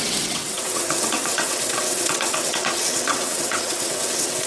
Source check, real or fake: fake